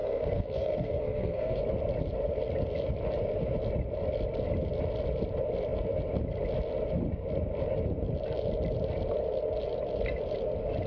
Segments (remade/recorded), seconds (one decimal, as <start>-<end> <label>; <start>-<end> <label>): 0.0-1.6 remade; 1.6-10.9 recorded